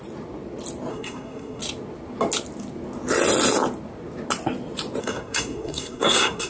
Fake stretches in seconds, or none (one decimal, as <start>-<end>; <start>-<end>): 0.9-1.6; 5.0-6.5